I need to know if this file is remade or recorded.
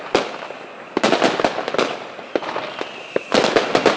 recorded